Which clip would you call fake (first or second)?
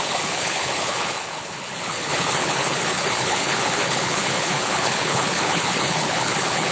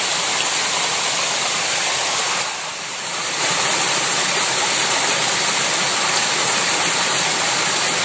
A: first